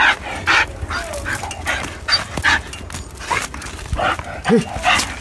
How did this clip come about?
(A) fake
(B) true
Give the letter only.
B